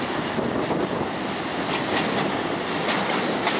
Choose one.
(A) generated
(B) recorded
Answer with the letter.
B